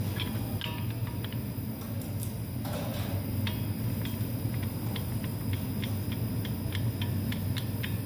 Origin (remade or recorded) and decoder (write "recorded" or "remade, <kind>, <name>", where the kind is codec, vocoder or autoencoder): recorded